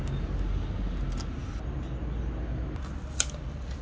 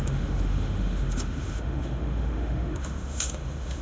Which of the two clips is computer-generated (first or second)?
second